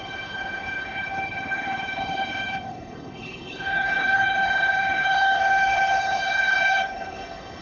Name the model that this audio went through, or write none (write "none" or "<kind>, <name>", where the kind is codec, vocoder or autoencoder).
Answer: codec, HILCodec